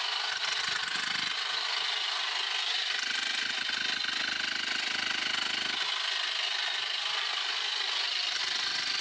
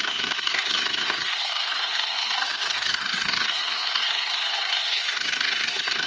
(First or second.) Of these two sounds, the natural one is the first